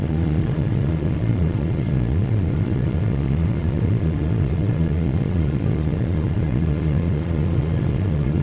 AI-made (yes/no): yes